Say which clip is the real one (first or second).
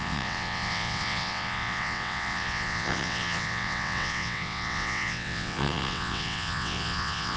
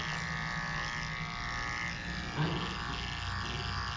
second